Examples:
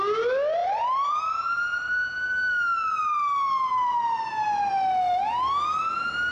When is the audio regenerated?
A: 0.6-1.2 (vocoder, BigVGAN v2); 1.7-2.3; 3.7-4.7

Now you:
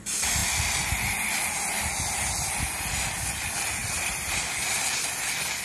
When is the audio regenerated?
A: 3.8-4.8 (vocoder, BigVGAN v2)

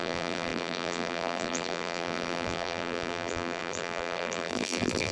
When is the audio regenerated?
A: 0.0-5.1 (vocoder, BigVGAN v2)

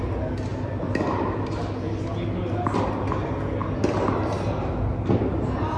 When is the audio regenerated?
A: 0.5-2.0 (vocoder, BigVGAN v2)

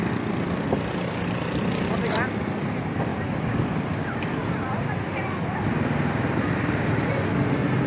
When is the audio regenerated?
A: 3.1-5.1 (vocoder, BigVGAN v2)